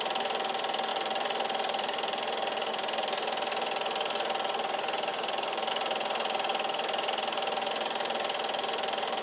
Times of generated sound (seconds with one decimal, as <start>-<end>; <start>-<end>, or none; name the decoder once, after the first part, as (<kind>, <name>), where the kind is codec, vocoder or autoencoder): 0.9-2.7 (vocoder, BigVGAN v2); 5.1-5.7